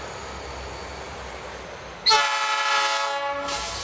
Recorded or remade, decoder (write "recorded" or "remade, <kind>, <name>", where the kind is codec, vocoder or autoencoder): recorded